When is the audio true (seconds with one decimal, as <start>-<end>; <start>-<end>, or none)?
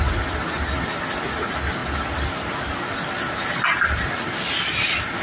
0.0-5.2